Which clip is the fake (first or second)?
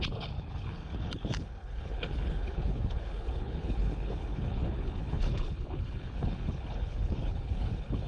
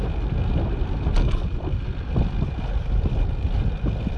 first